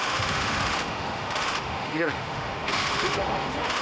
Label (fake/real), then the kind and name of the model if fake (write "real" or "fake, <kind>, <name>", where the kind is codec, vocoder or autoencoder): fake, autoencoder, DAC-VAE